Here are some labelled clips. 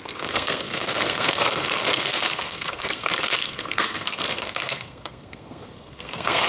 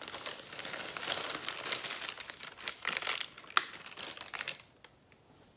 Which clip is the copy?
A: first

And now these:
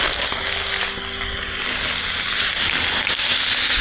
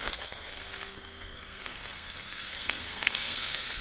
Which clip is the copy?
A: second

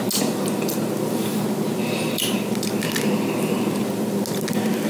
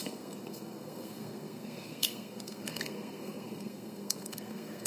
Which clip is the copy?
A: second